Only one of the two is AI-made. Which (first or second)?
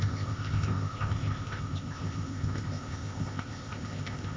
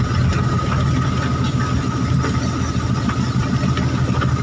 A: first